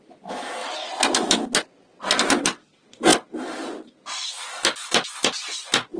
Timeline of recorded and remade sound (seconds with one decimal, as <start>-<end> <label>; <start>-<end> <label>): 0.0-6.0 recorded